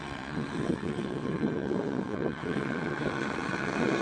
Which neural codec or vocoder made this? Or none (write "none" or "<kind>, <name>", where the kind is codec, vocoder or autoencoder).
vocoder, WaveNeXt